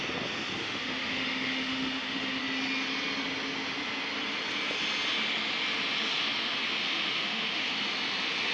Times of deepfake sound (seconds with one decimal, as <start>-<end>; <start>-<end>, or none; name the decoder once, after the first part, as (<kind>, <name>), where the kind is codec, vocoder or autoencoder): 0.6-2.4 (autoencoder, DAC-VAE); 6.8-7.7